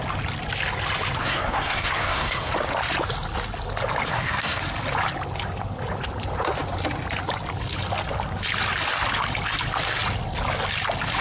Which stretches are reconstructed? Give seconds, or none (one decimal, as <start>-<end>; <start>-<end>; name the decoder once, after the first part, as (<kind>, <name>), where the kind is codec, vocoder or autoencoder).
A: 1.2-2.5 (codec, SNAC); 4.1-4.6